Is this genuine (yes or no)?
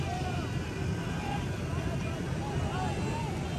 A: yes